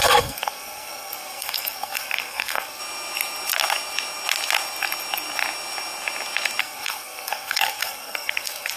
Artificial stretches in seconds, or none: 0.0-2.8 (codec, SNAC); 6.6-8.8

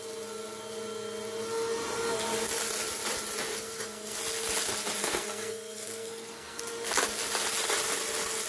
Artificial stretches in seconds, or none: 3.5-4.2 (codec, SNAC); 5.0-6.6

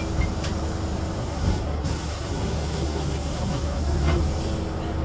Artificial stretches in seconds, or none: 1.2-4.2 (codec, SNAC)

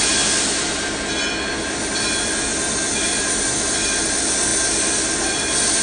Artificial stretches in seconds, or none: none

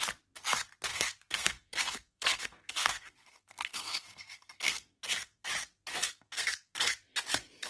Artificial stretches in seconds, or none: 0.9-5.5 (codec, SNAC); 5.9-6.9

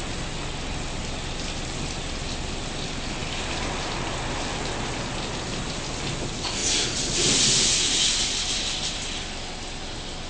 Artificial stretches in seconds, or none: none

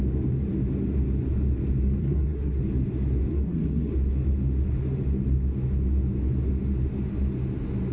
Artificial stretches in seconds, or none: 2.0-2.6 (codec, SNAC); 3.3-3.9